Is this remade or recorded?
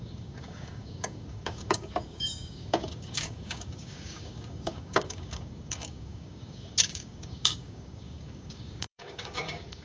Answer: remade